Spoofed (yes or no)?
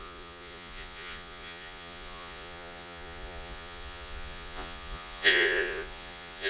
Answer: yes